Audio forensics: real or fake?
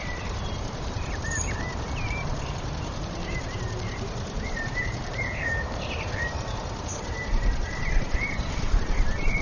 fake